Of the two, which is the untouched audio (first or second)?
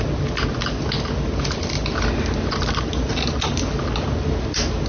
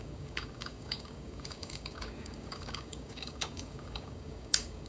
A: first